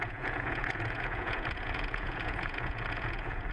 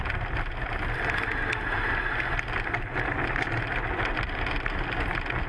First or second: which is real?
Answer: second